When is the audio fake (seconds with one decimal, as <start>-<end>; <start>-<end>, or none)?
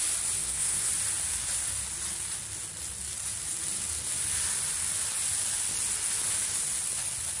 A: 0.4-0.9